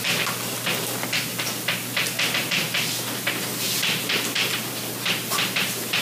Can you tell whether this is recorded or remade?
recorded